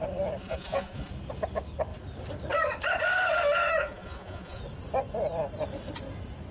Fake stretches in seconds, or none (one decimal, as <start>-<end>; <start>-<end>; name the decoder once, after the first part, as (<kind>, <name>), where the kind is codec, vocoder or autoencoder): 0.4-1.1 (vocoder, Vocos); 3.8-4.6